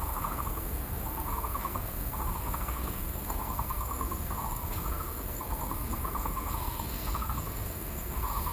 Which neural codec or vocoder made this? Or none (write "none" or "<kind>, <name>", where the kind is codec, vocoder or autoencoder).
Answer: codec, SNAC